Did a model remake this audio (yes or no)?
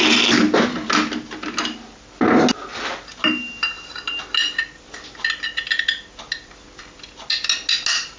no